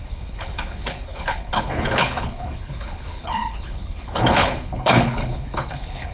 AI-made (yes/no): yes